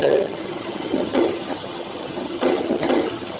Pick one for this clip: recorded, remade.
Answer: remade